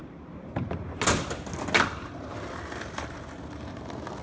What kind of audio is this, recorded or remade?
recorded